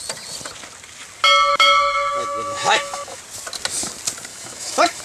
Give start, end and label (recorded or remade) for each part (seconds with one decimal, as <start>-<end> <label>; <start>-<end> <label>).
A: 0.0-1.5 recorded; 1.5-3.2 remade; 3.2-4.3 recorded; 4.3-5.0 remade